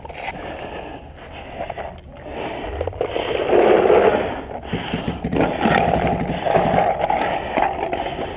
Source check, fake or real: real